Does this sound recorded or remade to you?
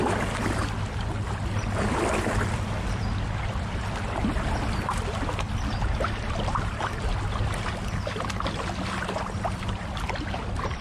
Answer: recorded